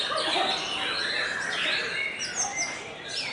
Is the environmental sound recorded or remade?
recorded